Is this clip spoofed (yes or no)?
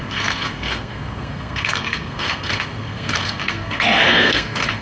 yes